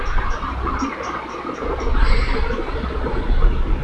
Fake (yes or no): no